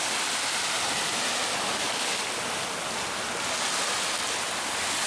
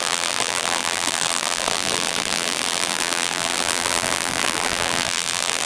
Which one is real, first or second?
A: first